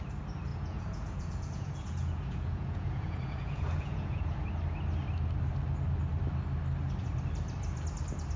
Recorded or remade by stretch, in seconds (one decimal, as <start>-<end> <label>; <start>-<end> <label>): 0.0-0.5 recorded; 0.5-4.5 remade; 4.5-8.4 recorded